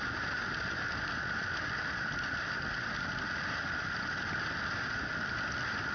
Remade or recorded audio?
recorded